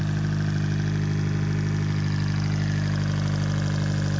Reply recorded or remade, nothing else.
recorded